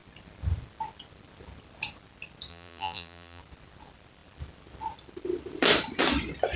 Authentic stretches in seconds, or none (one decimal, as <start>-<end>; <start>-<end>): 0.0-2.5; 3.4-6.6